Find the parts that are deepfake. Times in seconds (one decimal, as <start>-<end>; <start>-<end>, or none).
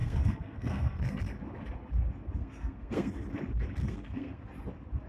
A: 0.0-1.2; 2.4-3.1; 3.8-4.4